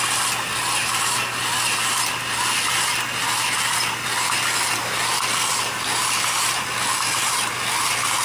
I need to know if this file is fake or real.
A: real